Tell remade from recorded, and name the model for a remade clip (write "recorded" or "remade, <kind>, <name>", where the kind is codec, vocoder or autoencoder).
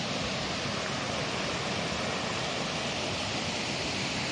recorded